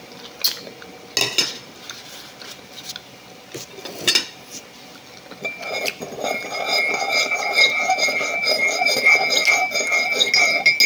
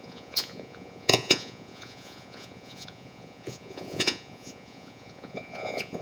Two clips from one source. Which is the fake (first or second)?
second